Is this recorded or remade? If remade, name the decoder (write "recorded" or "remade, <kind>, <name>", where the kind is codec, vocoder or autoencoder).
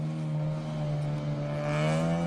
recorded